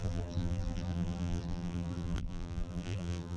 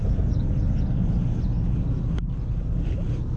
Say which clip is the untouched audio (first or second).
second